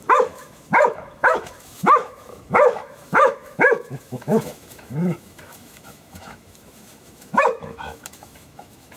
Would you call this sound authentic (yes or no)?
no